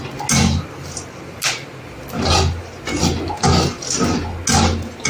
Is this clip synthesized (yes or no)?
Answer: no